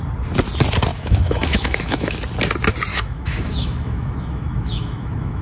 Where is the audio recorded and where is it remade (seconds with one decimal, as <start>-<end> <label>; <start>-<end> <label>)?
0.0-0.9 recorded; 0.9-2.2 remade; 2.2-2.9 recorded; 2.9-5.4 remade